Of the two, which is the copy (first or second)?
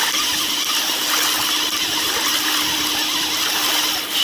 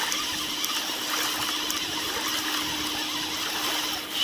first